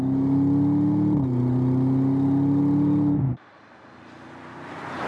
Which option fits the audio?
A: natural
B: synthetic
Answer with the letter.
A